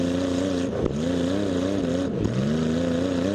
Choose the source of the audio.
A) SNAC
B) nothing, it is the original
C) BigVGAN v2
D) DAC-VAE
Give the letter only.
B